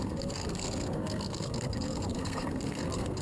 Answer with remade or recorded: remade